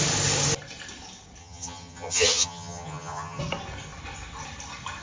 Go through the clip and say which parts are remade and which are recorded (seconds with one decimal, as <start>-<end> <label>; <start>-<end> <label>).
0.0-1.4 recorded; 1.4-3.4 remade; 3.4-5.0 recorded